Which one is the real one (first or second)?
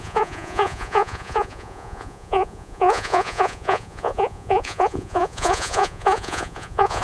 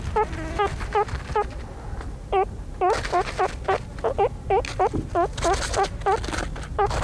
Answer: second